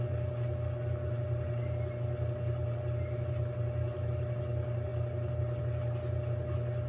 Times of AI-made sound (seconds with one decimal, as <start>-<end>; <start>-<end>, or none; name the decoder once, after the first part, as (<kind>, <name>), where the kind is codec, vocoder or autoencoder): none